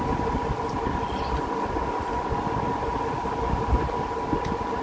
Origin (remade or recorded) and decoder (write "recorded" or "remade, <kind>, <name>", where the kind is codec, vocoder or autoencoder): recorded